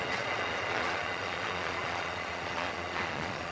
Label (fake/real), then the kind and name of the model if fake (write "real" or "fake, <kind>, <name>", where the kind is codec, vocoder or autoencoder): fake, vocoder, Vocos